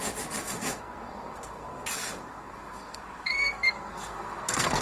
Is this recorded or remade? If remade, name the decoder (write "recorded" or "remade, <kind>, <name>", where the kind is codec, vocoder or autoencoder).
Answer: remade, codec, SNAC